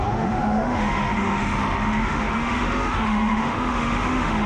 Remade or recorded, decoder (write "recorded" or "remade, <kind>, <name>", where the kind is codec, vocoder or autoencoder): remade, autoencoder, DAC-VAE